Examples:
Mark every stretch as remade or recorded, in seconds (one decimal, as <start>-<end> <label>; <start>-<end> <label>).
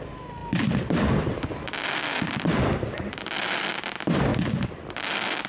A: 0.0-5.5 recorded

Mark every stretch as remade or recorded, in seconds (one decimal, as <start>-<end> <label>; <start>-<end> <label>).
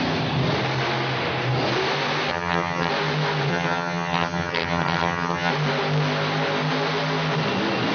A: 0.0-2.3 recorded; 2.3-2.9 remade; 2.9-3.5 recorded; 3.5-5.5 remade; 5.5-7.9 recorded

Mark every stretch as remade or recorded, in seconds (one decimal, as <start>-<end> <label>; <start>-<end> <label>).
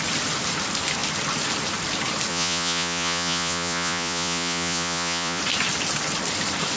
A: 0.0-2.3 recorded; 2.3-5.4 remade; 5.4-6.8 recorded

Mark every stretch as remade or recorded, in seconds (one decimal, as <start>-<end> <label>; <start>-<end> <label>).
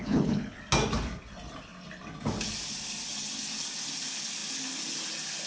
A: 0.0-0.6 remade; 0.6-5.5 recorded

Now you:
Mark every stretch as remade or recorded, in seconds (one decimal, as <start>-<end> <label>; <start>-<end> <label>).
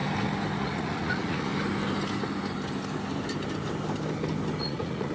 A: 0.0-0.6 recorded; 0.6-1.5 remade; 1.5-4.6 recorded; 4.6-5.1 remade